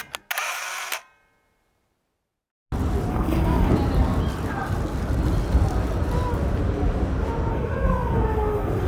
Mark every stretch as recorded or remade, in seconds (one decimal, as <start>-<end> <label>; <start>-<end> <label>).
0.0-3.1 recorded; 3.1-3.7 remade; 3.7-7.5 recorded; 7.5-8.9 remade